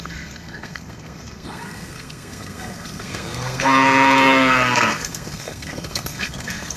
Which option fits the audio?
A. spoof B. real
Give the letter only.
A